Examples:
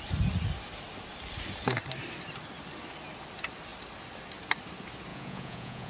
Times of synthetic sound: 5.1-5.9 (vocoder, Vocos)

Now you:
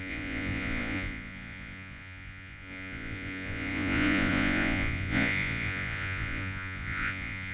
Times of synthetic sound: 0.0-7.5 (vocoder, Vocos)

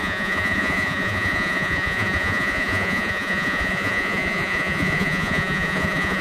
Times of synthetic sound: 0.0-6.2 (vocoder, Vocos)

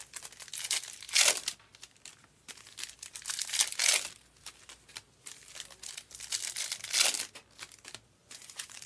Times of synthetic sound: 8.2-8.9 (vocoder, Vocos)

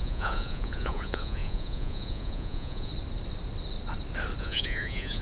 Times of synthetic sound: 0.0-2.9 (vocoder, Vocos); 4.4-5.2